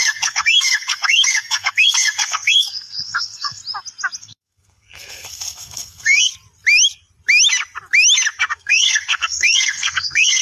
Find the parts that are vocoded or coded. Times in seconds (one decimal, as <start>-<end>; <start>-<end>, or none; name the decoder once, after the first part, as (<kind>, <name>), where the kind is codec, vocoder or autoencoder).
0.0-3.6 (codec, SNAC); 4.2-6.3; 8.5-10.4